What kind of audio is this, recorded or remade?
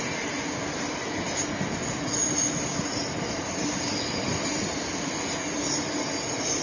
recorded